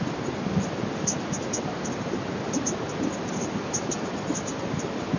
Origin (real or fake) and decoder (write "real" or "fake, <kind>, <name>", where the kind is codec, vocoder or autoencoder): real